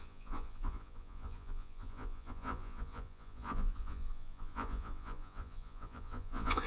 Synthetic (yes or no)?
yes